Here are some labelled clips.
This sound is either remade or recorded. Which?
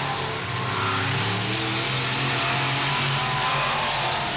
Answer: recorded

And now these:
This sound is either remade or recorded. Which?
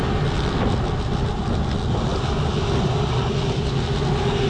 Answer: recorded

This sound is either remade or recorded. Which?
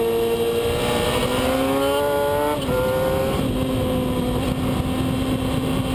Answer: recorded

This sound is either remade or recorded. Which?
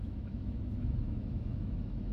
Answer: remade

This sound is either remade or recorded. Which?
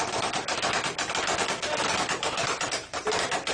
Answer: recorded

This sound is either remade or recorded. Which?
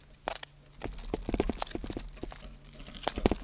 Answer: recorded